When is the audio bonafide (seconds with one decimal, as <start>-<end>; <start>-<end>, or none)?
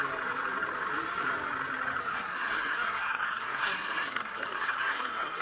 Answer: 0.0-2.0